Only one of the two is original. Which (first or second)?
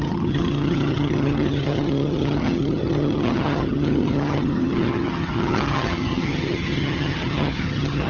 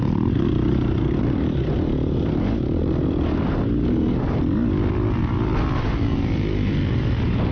second